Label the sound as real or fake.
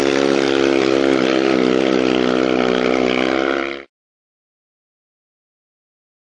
fake